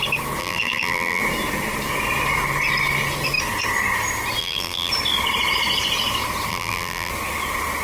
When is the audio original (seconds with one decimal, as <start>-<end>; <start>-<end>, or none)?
0.0-0.4; 1.2-4.4; 4.9-6.5; 7.1-7.8

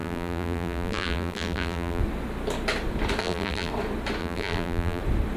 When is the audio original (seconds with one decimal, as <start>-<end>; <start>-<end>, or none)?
2.0-3.2; 3.7-4.2; 5.0-5.4

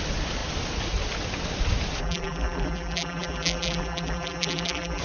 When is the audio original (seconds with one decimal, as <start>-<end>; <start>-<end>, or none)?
0.0-2.0

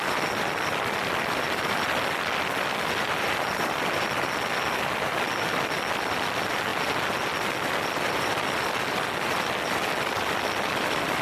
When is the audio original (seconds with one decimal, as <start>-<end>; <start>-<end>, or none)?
0.0-11.2

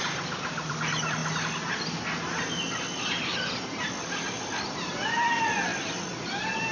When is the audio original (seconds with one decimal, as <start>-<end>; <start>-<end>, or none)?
1.2-4.0

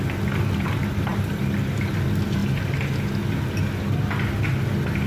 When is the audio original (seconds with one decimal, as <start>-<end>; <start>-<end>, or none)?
0.0-1.1; 1.9-2.4; 3.2-5.1